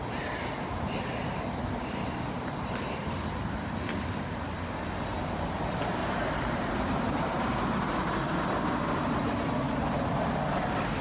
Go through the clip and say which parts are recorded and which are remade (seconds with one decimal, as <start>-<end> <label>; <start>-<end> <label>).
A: 0.0-6.0 recorded; 6.0-7.6 remade; 7.6-11.0 recorded